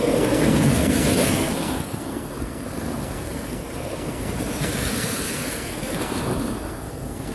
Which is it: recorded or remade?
remade